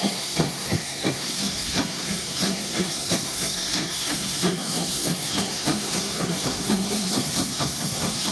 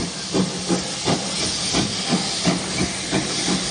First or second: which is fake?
first